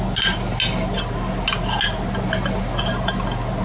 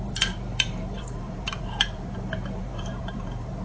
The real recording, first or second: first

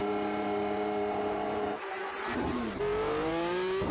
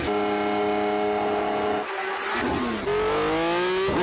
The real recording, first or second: second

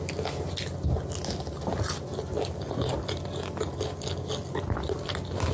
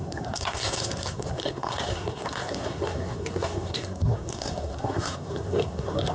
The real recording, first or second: first